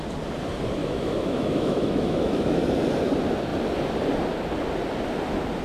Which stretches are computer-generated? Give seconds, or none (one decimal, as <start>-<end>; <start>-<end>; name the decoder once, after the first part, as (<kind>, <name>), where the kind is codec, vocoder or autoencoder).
0.8-2.6 (autoencoder, DAC-VAE)